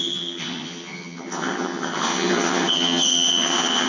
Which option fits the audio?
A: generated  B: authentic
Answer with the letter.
A